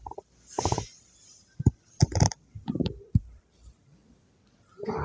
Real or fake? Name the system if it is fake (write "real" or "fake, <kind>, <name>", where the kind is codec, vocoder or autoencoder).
fake, vocoder, BigVGAN v2